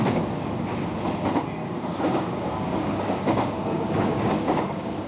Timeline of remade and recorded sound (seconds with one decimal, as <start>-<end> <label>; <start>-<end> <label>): 0.0-1.6 recorded; 1.6-5.1 remade